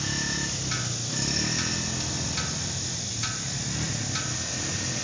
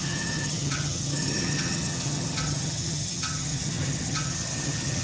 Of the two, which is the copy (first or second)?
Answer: second